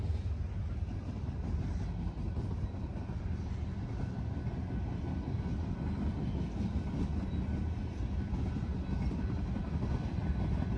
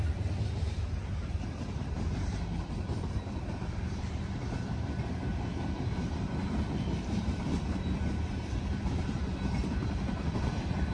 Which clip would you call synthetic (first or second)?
second